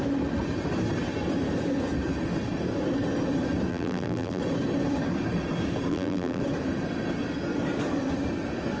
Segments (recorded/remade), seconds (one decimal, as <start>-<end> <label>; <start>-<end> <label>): 0.0-3.7 recorded; 3.7-4.4 remade; 4.4-5.9 recorded; 5.9-6.4 remade; 6.4-8.8 recorded